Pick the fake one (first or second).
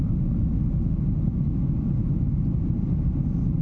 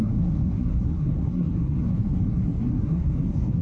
second